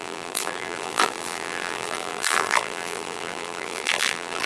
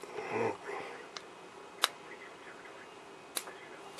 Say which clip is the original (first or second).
second